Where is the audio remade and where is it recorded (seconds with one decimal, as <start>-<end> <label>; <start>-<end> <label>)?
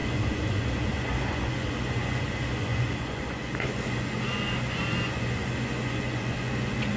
0.0-7.0 remade